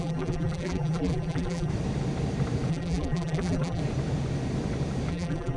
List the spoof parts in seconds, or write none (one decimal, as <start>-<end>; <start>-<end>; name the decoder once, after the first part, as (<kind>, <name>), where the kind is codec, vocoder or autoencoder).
0.0-1.7 (vocoder, BigVGAN v2); 2.7-3.8; 5.1-5.6